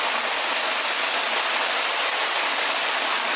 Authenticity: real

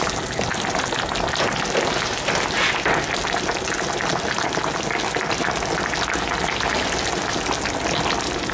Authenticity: real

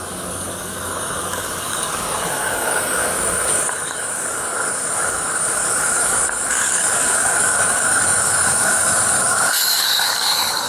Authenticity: fake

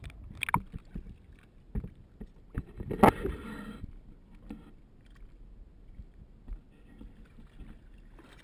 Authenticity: real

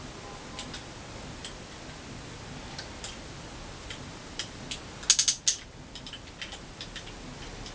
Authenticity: real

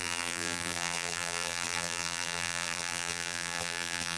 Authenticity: fake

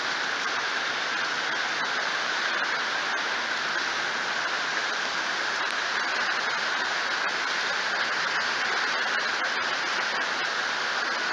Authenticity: real